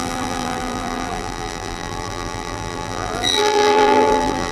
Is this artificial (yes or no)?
yes